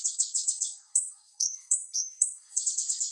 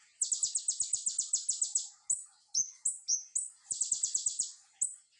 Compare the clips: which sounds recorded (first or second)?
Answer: second